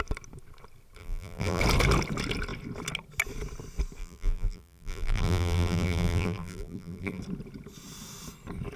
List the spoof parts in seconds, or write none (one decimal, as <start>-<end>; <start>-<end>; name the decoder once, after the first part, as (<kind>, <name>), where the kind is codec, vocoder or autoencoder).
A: 1.0-1.6 (vocoder, BigVGAN v2); 4.0-7.2